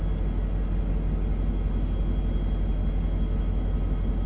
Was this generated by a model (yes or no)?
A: no